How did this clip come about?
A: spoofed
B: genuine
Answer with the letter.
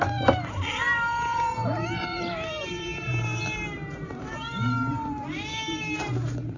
A